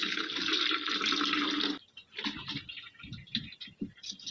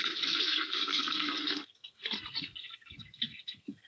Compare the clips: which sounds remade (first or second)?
second